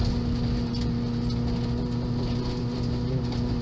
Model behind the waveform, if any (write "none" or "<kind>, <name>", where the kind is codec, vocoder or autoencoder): none